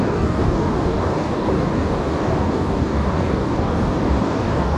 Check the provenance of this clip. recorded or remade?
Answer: remade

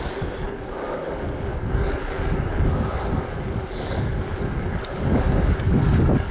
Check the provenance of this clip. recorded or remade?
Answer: remade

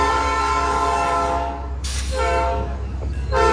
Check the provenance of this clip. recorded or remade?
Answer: remade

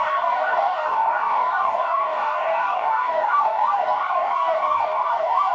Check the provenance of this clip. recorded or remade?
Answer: remade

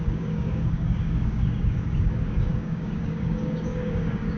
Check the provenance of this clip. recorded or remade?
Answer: remade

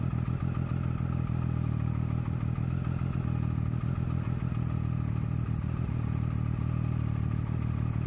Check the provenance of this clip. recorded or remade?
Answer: recorded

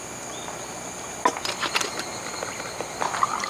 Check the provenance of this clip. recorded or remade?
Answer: recorded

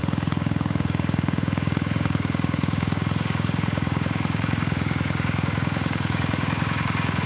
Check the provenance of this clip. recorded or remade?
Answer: remade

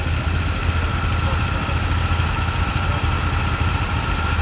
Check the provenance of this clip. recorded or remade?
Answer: recorded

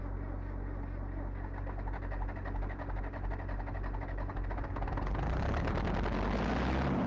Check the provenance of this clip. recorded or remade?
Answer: recorded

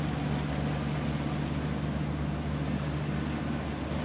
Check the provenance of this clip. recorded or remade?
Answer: recorded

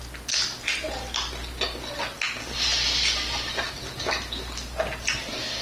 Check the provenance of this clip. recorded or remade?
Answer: recorded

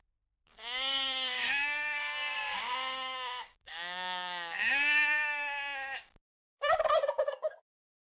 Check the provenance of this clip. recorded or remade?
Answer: remade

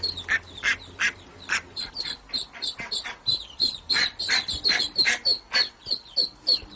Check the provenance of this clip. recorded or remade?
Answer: recorded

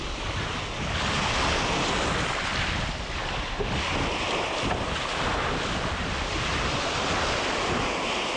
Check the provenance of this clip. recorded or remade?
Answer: recorded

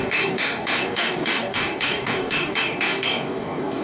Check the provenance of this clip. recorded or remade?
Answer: remade